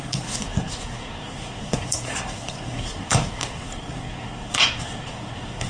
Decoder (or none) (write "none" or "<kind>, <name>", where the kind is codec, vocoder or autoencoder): codec, SNAC